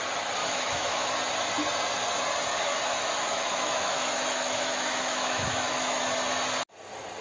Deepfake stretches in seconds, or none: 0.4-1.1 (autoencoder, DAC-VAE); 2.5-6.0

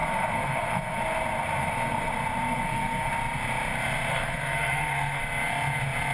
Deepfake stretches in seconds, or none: 0.0-1.0 (codec, SNAC); 1.6-2.1; 2.5-3.1; 4.1-5.2

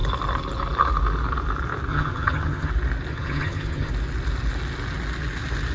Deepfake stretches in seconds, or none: 1.9-2.7 (vocoder, HiFi-GAN); 3.1-3.9

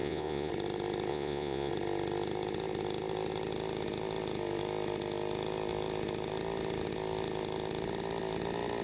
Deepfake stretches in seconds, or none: 0.0-0.5 (vocoder, Vocos); 1.1-1.7